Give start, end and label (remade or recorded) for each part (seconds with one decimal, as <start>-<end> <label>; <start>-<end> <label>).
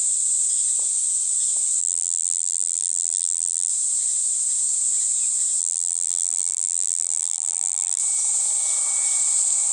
0.0-1.8 recorded; 1.8-3.7 remade; 3.7-5.6 recorded; 5.6-8.0 remade; 8.0-9.7 recorded